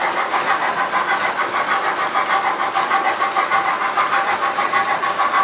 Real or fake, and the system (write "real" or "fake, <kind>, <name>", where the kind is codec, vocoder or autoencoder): real